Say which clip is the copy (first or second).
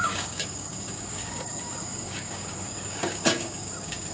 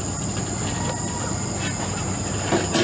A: first